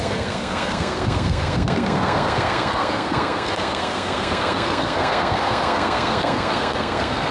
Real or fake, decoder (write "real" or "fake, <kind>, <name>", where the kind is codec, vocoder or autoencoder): fake, codec, SNAC